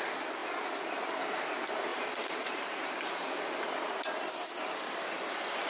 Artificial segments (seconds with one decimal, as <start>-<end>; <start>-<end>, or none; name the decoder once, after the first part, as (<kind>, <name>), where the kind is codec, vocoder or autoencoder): 1.9-3.0 (vocoder, BigVGAN v2)